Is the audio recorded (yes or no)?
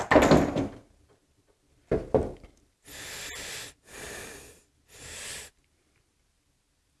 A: yes